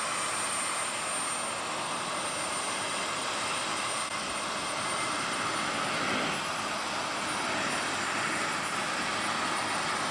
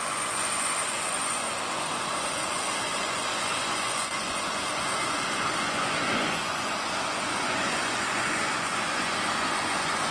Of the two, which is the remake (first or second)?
second